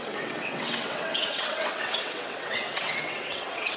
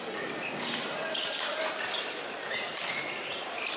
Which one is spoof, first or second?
first